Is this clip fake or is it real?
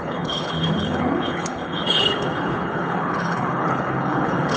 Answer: fake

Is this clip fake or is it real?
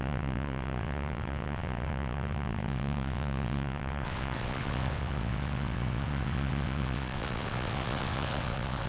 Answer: fake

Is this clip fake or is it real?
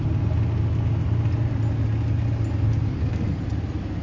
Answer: real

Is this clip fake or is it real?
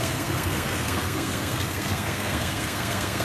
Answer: fake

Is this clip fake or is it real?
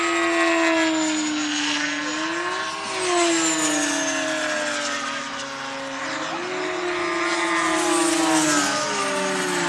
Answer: real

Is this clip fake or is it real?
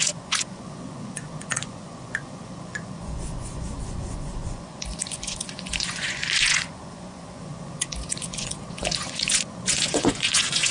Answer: fake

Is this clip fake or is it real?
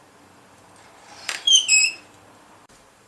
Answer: fake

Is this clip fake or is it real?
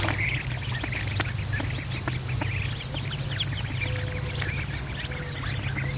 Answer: real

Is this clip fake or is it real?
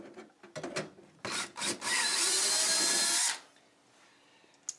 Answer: real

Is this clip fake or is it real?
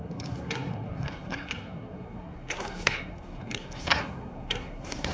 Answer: fake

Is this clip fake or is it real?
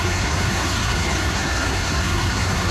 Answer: fake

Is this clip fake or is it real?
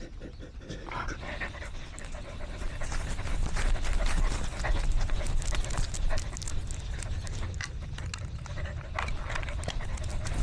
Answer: real